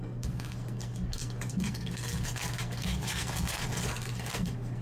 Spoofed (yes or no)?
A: yes